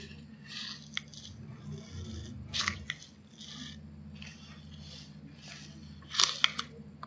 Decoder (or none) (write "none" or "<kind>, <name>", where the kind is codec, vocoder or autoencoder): none